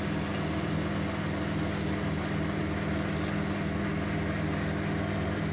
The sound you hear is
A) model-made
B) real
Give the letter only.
B